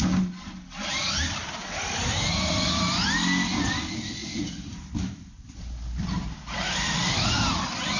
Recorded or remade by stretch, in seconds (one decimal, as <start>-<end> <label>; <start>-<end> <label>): 0.0-4.2 recorded; 4.2-7.0 remade; 7.0-8.0 recorded